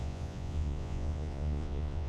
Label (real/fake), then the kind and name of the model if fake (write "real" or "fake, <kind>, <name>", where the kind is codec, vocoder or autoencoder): fake, vocoder, Vocos